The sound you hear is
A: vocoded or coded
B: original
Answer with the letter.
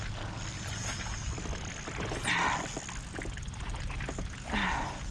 B